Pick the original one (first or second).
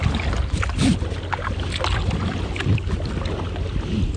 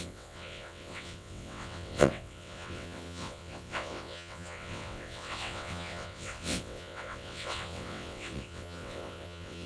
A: first